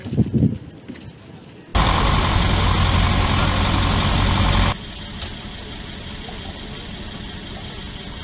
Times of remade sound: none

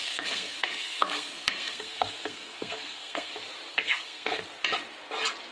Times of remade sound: 0.0-3.3 (codec, SNAC); 3.7-4.4